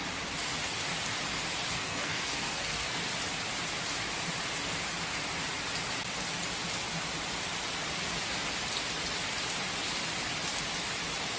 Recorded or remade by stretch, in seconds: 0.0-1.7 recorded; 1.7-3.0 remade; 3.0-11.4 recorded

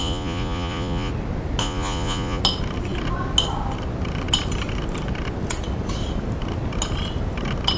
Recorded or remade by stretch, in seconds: 0.0-1.1 remade; 1.1-1.6 recorded; 1.6-2.4 remade; 2.4-7.8 recorded